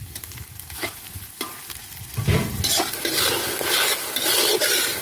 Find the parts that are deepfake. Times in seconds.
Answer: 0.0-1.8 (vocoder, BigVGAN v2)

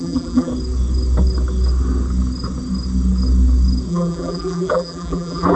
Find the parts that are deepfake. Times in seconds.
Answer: 0.0-0.5 (vocoder, BigVGAN v2); 3.9-5.6

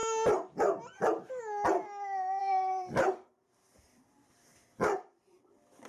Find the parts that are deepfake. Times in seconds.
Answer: 2.4-5.5 (vocoder, BigVGAN v2)